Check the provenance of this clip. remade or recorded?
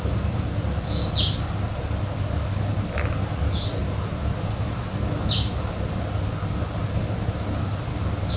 recorded